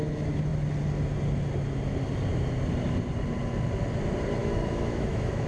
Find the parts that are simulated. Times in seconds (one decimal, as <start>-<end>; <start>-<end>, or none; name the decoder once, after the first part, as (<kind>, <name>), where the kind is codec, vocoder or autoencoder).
4.4-5.5 (autoencoder, DAC-VAE)